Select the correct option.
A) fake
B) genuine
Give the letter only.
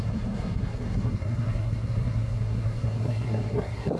A